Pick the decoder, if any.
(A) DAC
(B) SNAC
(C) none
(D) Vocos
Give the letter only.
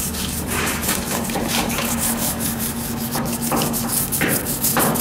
A